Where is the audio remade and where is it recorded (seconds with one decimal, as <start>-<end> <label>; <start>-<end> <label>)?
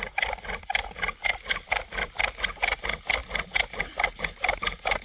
0.0-5.0 recorded